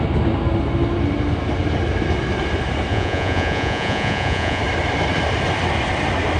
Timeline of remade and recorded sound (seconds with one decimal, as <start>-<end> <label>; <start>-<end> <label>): 0.0-2.9 recorded; 2.9-4.6 remade; 4.6-6.4 recorded